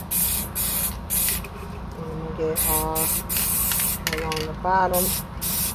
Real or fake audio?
real